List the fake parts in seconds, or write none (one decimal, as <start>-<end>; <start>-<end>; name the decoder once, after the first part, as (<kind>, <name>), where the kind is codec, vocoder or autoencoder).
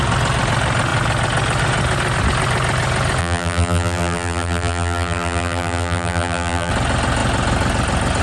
3.2-6.7 (vocoder, BigVGAN v2)